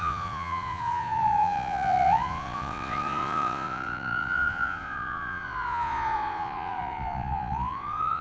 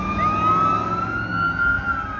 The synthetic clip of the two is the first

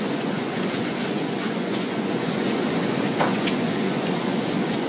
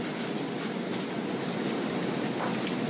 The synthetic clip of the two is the first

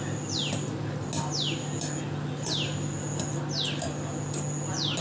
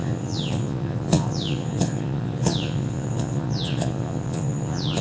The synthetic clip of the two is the second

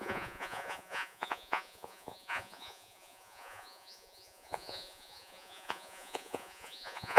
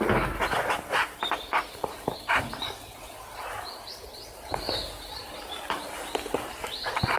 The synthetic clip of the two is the first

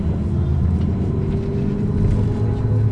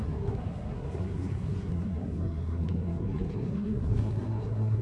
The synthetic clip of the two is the second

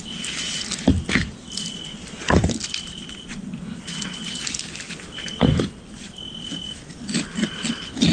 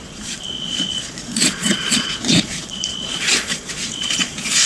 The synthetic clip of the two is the second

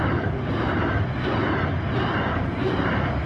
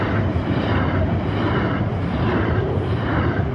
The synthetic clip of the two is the second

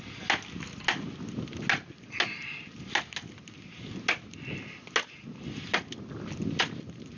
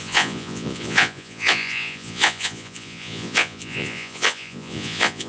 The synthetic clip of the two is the second